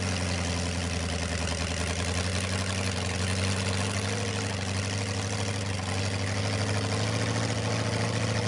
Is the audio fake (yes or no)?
no